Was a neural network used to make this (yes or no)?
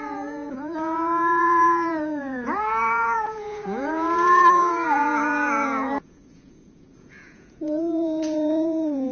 yes